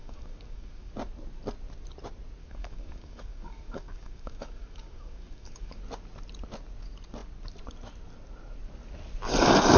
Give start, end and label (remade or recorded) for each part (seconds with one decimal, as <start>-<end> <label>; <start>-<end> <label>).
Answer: 0.0-0.9 remade; 0.9-2.4 recorded; 2.4-5.8 remade; 5.8-9.8 recorded